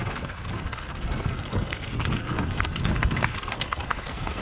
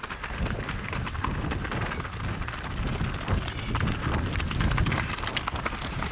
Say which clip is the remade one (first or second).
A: first